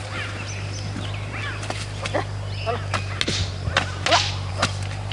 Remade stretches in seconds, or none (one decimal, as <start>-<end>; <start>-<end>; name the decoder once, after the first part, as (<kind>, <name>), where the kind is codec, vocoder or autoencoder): none